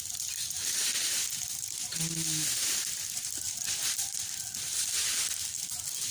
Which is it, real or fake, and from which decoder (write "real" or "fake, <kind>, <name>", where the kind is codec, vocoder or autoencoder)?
real